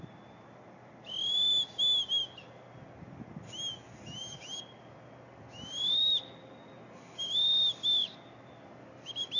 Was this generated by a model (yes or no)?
no